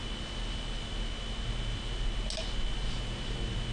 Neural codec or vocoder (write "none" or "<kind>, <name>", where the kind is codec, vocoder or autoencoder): none